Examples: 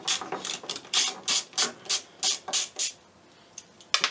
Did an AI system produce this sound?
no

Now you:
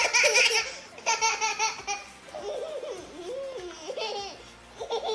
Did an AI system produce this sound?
no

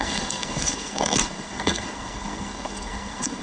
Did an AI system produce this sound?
yes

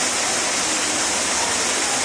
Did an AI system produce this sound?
no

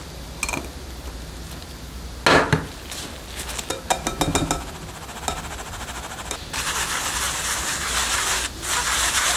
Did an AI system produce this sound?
no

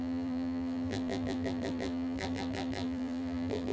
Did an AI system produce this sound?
yes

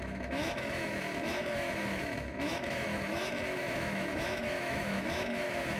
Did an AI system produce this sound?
yes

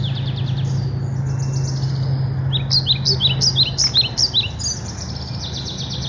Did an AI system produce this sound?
no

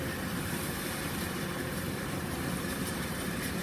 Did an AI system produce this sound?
yes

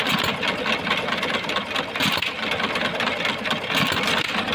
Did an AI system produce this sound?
no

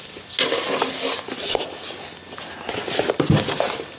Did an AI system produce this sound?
no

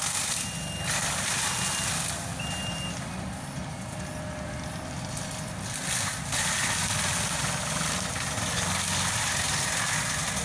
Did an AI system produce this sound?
no